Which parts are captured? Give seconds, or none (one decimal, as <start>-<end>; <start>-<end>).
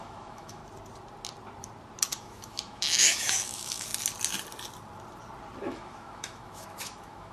0.6-2.2; 3.9-5.6